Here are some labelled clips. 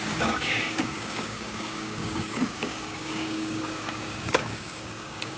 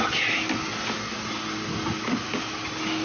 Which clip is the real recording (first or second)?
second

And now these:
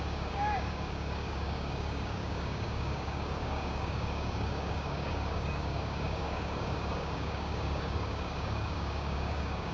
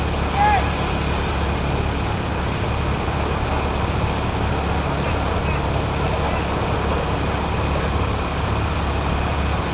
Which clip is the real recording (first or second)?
second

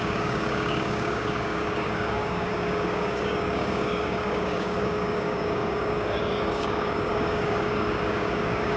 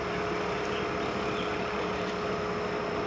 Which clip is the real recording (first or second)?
second